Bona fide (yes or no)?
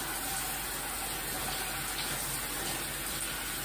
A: yes